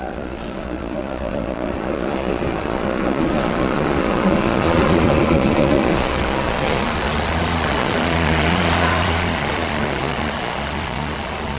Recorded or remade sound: remade